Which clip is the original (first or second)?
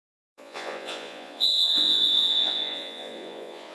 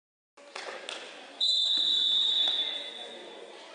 second